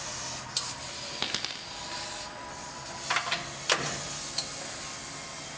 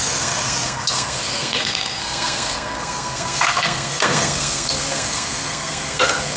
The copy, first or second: second